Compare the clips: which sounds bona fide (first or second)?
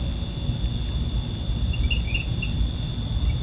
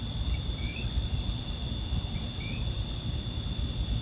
first